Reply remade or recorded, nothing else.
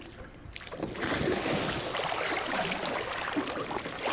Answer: recorded